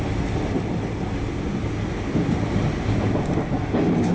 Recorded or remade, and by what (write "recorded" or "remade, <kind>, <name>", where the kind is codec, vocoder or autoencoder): recorded